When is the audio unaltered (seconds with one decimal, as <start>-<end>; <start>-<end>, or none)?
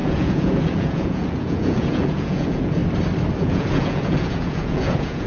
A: 2.8-3.4